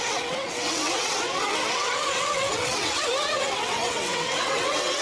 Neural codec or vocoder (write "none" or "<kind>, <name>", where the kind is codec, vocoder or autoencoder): vocoder, WaveNeXt